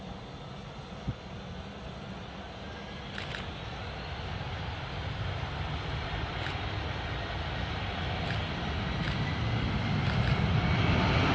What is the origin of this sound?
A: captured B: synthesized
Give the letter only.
A